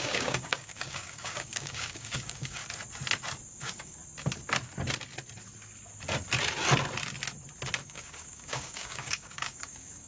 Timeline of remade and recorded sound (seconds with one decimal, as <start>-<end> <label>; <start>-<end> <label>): 0.0-2.6 remade; 2.6-3.5 recorded; 3.5-4.0 remade; 4.0-7.8 recorded; 7.8-10.1 remade